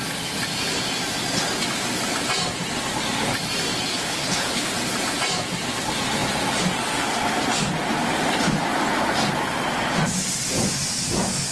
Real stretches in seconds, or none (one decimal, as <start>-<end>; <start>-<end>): 0.0-3.9; 4.7-11.5